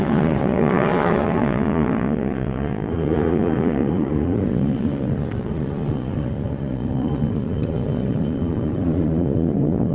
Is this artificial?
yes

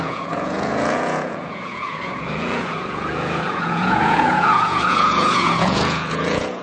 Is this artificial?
yes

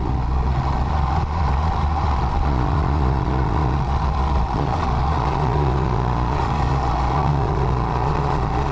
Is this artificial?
yes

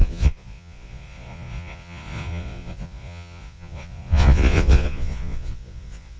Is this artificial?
yes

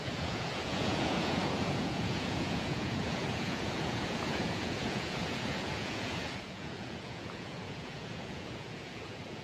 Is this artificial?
yes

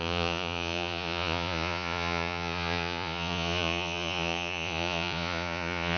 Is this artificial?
yes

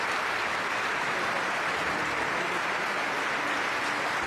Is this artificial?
no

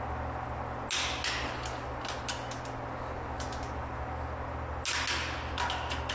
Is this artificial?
no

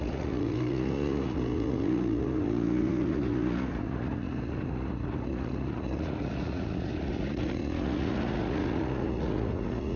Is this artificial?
yes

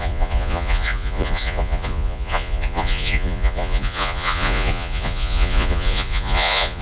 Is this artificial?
yes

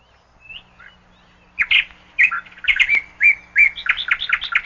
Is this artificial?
no